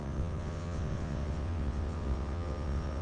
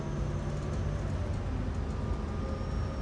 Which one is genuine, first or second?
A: second